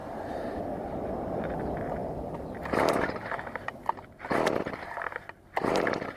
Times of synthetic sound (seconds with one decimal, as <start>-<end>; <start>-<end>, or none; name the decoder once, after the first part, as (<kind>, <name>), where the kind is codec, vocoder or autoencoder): 0.0-0.6 (vocoder, BigVGAN v2); 2.0-5.7